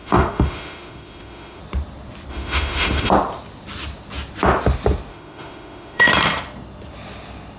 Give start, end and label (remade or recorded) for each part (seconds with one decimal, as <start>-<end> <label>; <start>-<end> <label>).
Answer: 0.0-1.6 remade; 1.6-2.3 recorded; 2.3-3.1 remade; 3.1-5.1 recorded; 5.1-6.1 remade; 6.1-7.6 recorded